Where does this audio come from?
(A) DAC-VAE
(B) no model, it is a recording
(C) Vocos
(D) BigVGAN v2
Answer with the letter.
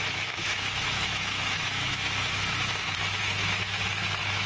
A